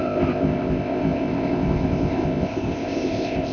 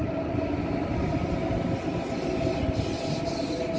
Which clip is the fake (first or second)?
first